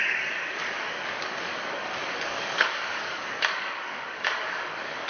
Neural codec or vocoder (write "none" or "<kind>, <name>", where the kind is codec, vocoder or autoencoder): codec, DAC